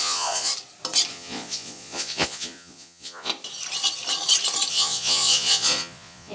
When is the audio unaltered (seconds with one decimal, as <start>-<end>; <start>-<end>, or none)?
0.5-1.1; 3.3-4.7